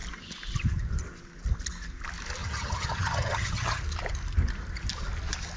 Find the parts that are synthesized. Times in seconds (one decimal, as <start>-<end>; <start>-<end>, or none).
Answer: 2.4-3.8